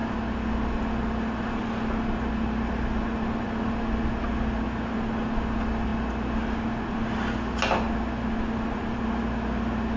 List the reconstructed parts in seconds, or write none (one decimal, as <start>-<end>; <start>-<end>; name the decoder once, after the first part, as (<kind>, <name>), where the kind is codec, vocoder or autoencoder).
none